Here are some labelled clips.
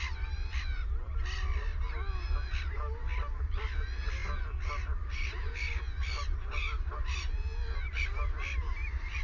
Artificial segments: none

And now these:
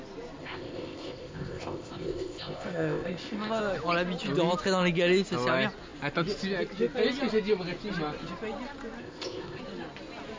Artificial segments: 0.4-3.6; 9.0-9.6

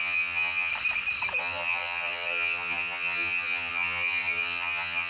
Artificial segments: 0.0-0.7; 1.4-5.1

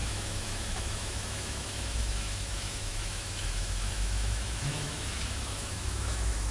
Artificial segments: 0.0-6.5

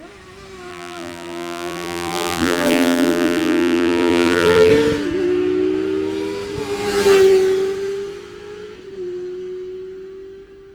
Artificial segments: 0.7-4.7

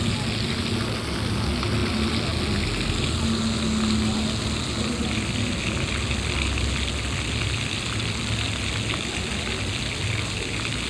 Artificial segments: none